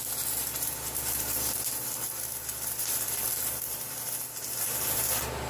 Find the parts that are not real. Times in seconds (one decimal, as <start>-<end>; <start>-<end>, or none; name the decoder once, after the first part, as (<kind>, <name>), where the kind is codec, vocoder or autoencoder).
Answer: none